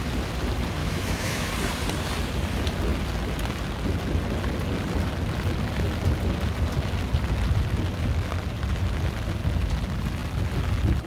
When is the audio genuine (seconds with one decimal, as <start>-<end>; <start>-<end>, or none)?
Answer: 0.0-0.8; 1.5-11.1